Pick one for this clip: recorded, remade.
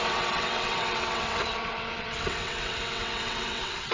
remade